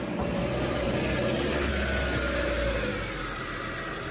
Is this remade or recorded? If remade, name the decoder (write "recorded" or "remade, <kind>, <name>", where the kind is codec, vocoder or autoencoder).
recorded